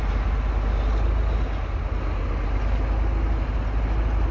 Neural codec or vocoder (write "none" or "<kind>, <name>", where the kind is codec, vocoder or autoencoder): none